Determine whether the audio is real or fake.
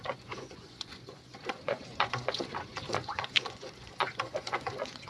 fake